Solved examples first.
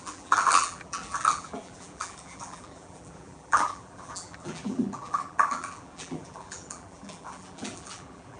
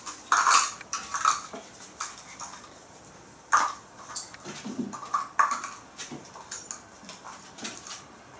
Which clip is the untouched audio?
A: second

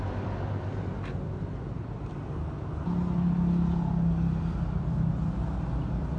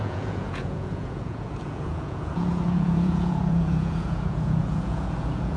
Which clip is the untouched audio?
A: first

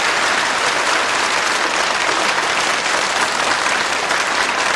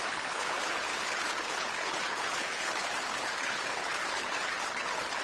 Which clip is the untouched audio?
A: first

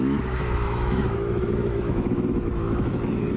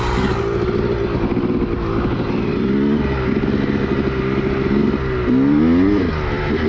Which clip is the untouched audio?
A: second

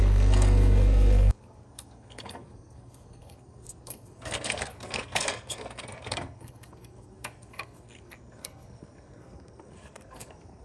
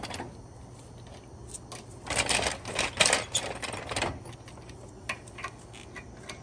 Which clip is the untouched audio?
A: second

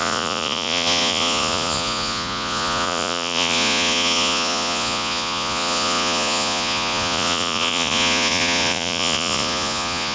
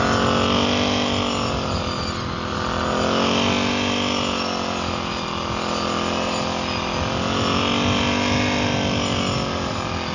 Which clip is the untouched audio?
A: second